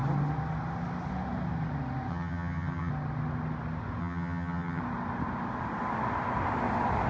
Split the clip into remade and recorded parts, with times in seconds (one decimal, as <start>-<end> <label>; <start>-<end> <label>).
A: 0.0-2.1 recorded; 2.1-2.9 remade; 2.9-4.0 recorded; 4.0-4.8 remade; 4.8-7.1 recorded